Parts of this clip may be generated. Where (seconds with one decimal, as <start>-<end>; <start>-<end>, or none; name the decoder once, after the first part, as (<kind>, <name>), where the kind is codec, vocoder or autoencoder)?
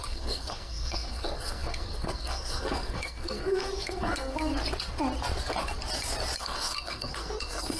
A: 0.0-4.5 (codec, SNAC); 6.4-7.8